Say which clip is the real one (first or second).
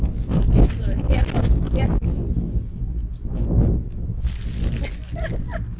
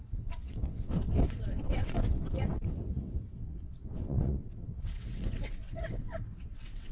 first